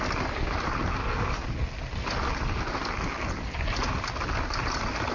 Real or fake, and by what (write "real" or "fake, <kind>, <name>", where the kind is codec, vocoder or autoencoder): real